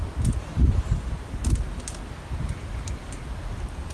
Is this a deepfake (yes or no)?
no